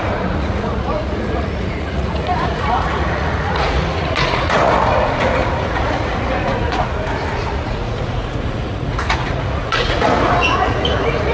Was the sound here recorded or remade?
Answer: remade